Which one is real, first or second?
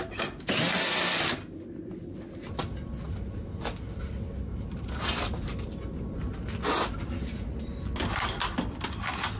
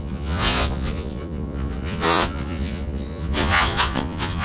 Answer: first